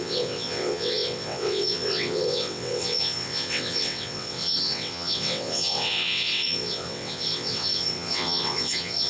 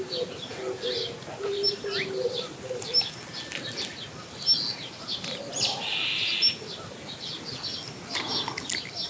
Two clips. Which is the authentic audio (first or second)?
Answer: second